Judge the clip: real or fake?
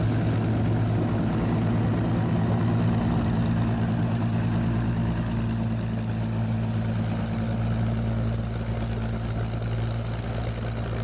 real